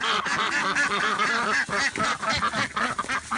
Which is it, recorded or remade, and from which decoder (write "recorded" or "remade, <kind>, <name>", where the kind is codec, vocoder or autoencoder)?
recorded